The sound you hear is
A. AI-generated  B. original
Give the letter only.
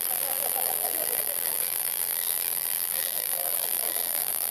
A